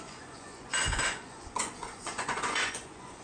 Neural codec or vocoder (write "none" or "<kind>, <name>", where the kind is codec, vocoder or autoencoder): vocoder, Vocos